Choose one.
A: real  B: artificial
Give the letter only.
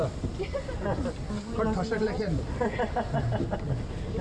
A